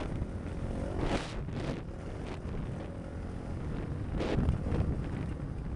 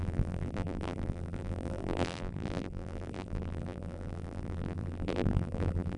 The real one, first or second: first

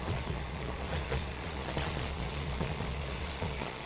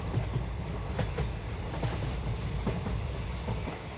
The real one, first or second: second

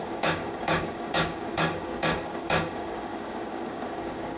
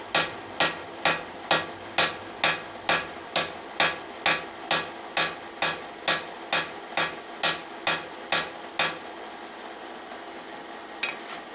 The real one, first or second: second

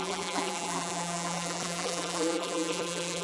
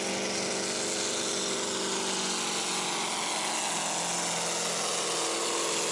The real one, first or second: second